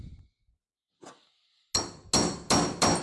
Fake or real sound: real